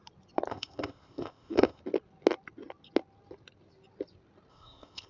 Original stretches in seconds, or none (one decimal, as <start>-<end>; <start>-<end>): 0.0-0.5; 1.8-4.5